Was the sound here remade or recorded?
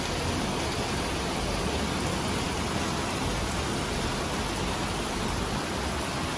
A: recorded